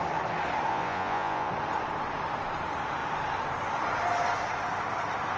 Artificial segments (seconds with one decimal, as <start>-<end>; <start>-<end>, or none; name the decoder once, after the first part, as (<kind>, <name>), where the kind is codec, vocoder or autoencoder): 0.7-1.5 (vocoder, Vocos)